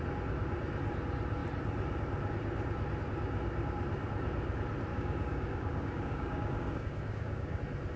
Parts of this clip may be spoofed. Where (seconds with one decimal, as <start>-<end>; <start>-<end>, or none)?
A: 4.9-7.6